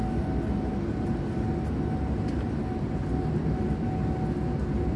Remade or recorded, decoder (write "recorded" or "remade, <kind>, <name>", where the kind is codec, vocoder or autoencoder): recorded